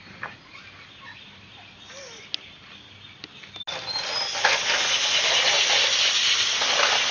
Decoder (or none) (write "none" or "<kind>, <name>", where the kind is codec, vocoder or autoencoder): none